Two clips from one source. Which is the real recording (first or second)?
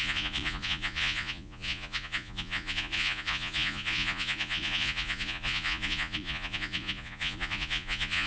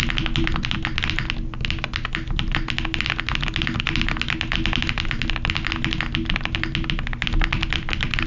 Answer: second